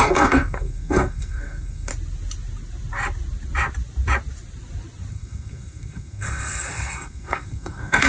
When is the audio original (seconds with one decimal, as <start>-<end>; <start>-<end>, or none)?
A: 1.9-5.1